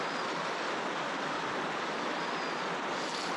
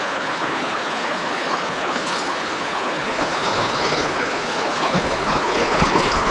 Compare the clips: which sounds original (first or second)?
first